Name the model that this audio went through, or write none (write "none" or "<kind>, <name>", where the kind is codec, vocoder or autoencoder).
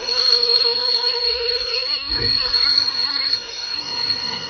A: codec, SNAC